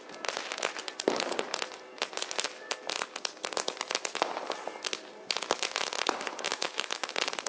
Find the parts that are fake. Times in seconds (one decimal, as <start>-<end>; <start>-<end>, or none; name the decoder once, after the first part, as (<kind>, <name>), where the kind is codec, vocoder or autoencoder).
6.5-7.1 (autoencoder, DAC-VAE)

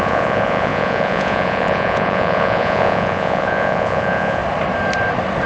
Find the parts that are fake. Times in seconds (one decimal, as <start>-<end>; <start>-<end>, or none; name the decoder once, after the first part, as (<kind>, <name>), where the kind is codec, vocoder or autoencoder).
0.0-4.4 (vocoder, Vocos)

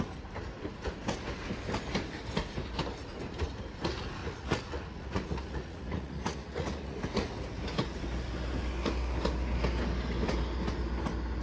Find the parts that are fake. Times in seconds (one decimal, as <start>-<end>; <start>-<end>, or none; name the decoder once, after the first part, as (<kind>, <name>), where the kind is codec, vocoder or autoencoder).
4.2-7.0 (vocoder, Vocos)

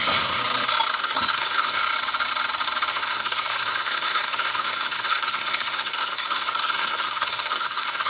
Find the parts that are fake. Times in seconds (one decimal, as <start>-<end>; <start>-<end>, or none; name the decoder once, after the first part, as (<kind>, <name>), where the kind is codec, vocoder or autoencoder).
0.0-0.4 (codec, SNAC); 1.0-1.8; 2.9-8.1

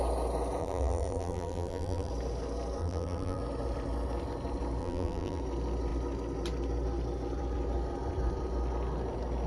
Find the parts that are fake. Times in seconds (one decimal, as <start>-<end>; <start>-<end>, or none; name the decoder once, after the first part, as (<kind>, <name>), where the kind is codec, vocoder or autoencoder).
0.6-2.1 (vocoder, BigVGAN v2); 2.8-3.4; 4.8-5.4

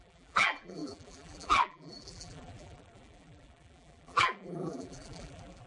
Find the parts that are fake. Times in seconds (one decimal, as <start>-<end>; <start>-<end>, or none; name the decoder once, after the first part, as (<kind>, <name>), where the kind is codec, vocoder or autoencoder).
0.0-5.7 (vocoder, BigVGAN v2)